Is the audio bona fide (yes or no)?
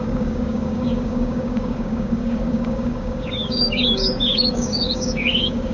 no